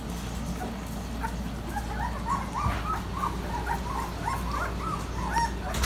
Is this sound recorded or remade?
recorded